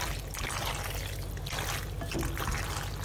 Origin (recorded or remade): recorded